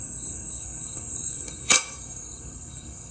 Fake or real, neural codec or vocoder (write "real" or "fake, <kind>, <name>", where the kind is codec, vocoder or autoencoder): fake, codec, SNAC